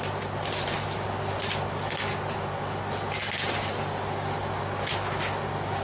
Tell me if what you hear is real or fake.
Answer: real